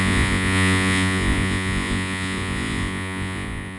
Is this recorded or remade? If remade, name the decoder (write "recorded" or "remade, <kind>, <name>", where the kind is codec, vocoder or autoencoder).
remade, vocoder, Vocos